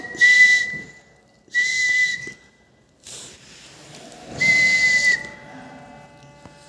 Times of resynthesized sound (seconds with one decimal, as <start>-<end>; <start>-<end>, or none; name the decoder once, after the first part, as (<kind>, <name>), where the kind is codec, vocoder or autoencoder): 1.7-2.3 (vocoder, BigVGAN v2)